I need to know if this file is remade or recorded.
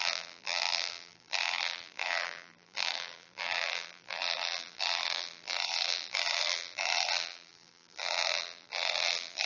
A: remade